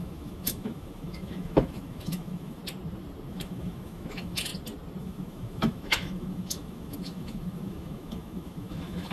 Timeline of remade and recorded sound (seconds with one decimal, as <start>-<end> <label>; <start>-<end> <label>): 0.0-2.6 remade; 2.6-3.3 recorded; 3.3-4.5 remade; 4.5-5.0 recorded; 5.0-9.1 remade